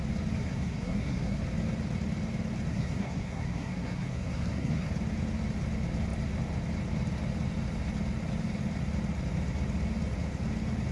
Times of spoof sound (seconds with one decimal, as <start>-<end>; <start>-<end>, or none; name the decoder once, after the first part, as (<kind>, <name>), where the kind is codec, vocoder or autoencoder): 0.4-1.4 (codec, SNAC); 2.7-4.9